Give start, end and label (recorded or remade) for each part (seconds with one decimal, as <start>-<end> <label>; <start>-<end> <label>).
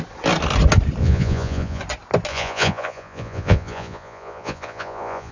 0.0-1.0 recorded; 1.0-1.8 remade; 1.8-2.3 recorded; 2.3-5.3 remade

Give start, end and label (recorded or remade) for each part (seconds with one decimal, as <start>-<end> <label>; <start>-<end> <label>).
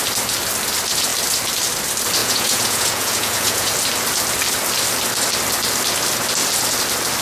0.0-2.2 recorded; 2.2-3.7 remade; 3.7-7.2 recorded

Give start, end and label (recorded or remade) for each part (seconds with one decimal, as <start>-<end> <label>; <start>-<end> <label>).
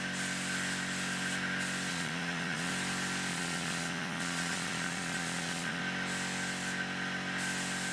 0.0-1.9 recorded; 1.9-2.7 remade; 2.7-3.3 recorded; 3.3-5.8 remade; 5.8-7.9 recorded